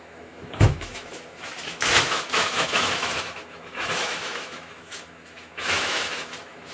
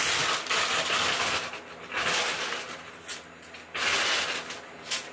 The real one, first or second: second